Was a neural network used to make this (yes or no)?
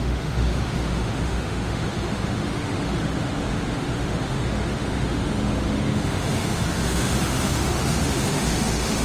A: yes